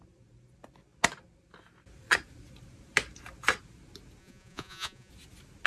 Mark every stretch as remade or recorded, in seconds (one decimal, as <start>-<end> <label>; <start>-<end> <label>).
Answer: 0.0-4.2 recorded; 4.2-5.1 remade; 5.1-5.7 recorded